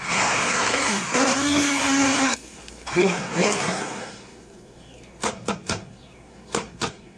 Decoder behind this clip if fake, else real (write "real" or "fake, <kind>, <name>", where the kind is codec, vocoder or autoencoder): fake, codec, SNAC